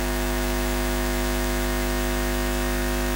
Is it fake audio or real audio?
fake